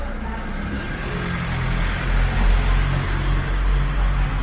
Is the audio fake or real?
real